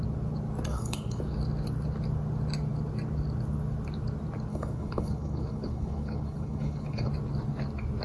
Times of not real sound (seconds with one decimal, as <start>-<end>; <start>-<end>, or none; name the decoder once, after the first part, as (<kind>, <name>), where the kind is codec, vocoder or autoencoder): 0.7-1.2 (codec, HILCodec); 4.5-7.1